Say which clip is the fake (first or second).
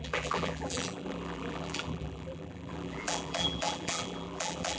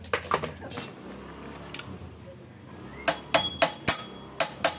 first